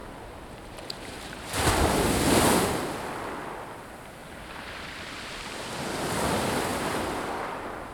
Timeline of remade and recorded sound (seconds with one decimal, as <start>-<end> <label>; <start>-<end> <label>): 0.0-2.4 remade; 2.4-4.2 recorded; 4.2-5.6 remade; 5.6-7.9 recorded